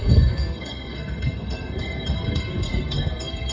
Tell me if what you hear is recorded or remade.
remade